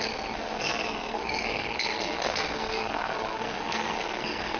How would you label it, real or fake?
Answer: fake